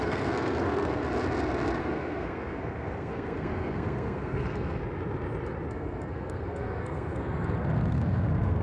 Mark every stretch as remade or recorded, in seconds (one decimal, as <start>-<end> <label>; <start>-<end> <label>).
0.0-1.0 remade; 1.0-1.8 recorded; 1.8-4.8 remade; 4.8-5.7 recorded; 5.7-8.6 remade